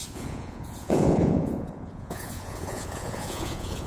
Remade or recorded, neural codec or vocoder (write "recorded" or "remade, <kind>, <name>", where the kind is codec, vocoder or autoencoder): remade, vocoder, Vocos